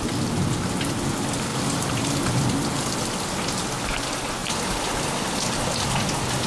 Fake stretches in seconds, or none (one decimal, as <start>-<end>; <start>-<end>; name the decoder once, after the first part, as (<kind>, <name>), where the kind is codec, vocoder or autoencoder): 1.5-2.2 (vocoder, BigVGAN v2); 4.4-5.1